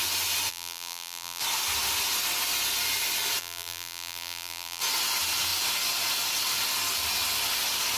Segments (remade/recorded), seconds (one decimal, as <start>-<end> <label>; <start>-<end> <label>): 0.0-0.5 recorded; 0.5-1.4 remade; 1.4-3.4 recorded; 3.4-4.8 remade; 4.8-8.0 recorded